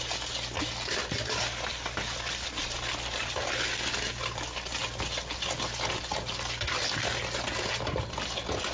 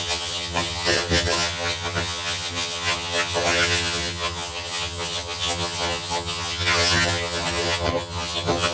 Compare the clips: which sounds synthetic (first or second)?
second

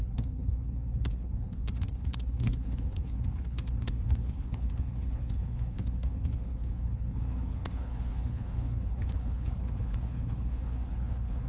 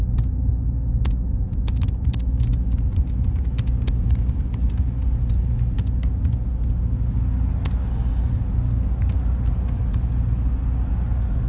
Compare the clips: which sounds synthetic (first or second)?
first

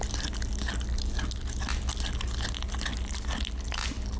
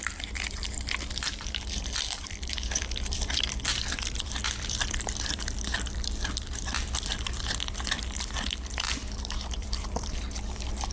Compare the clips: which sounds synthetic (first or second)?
second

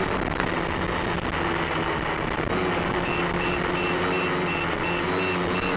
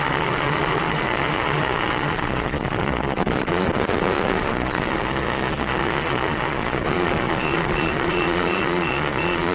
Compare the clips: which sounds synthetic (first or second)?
second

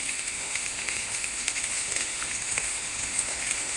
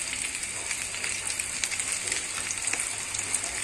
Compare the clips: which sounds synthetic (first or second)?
first